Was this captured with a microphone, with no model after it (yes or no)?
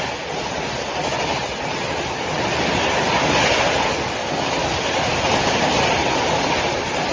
yes